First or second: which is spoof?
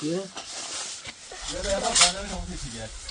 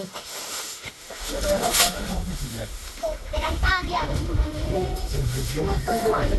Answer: second